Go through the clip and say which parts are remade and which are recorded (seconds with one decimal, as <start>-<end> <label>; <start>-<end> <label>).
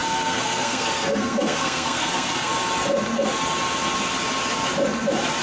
0.0-2.5 remade; 2.5-5.4 recorded